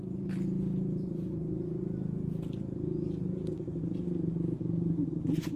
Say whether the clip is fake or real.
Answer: real